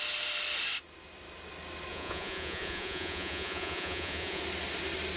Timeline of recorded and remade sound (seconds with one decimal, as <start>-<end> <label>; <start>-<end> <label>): 0.0-1.9 recorded; 1.9-4.4 remade; 4.4-5.2 recorded